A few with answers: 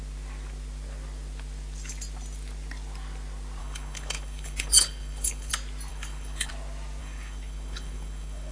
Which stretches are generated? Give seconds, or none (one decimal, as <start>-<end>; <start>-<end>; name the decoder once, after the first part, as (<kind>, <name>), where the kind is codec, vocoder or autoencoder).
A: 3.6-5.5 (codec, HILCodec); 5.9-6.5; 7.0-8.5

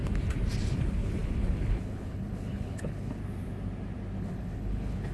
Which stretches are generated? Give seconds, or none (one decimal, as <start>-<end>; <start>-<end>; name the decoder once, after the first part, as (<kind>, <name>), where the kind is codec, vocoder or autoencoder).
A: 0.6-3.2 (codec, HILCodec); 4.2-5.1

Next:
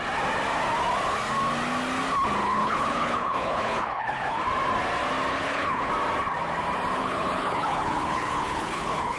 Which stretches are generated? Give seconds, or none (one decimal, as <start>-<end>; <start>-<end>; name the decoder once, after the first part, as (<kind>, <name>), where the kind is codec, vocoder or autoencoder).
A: 2.4-4.4 (codec, HILCodec); 5.3-5.9; 7.0-9.2

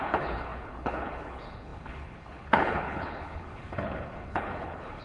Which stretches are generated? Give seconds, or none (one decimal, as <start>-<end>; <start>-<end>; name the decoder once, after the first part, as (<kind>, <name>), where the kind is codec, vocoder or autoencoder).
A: 0.0-5.0 (codec, HILCodec)